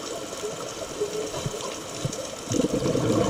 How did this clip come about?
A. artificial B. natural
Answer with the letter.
B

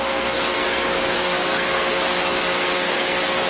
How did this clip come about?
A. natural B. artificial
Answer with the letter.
B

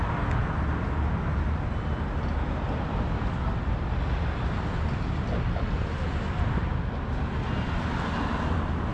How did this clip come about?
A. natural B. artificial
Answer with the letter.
A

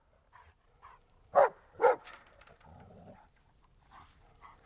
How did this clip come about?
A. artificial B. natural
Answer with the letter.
A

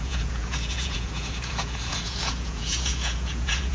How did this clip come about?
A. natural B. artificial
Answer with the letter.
B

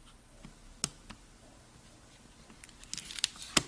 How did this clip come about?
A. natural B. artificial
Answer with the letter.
A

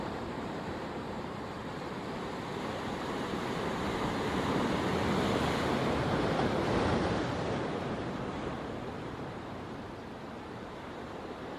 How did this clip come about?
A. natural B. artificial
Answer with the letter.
B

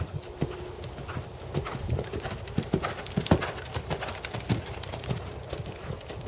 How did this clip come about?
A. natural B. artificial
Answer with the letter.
A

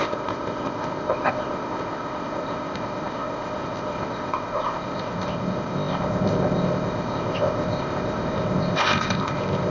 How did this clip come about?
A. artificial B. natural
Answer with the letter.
A